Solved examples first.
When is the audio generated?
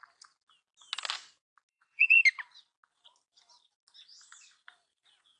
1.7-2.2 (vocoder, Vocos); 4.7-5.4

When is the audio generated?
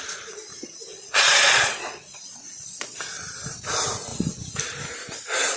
0.9-3.0 (vocoder, Vocos)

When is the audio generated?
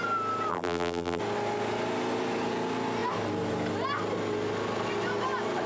0.5-1.2 (vocoder, BigVGAN v2)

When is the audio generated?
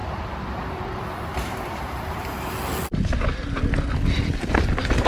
0.0-2.5 (vocoder, BigVGAN v2)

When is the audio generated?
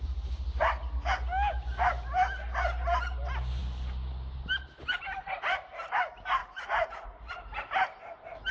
6.4-7.3 (vocoder, Vocos)